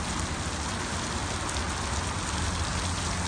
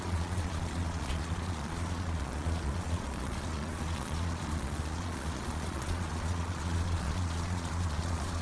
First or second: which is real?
first